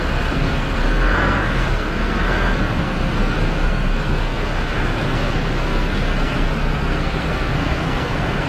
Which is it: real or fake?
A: fake